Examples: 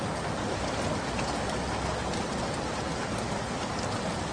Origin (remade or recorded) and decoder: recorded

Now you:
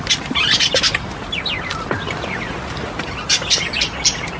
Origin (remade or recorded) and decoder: recorded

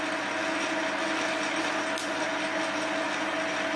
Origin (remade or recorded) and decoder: recorded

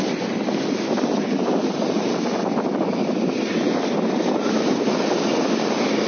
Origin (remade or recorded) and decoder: recorded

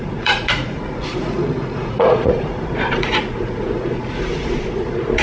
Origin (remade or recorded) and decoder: remade, vocoder, Vocos